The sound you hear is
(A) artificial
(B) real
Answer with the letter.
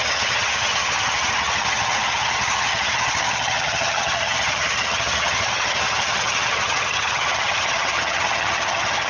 A